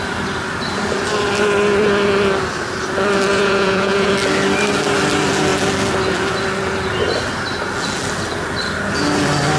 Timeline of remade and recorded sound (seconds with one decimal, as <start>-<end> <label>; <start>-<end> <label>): 0.0-3.3 recorded; 3.3-4.1 remade; 4.1-9.6 recorded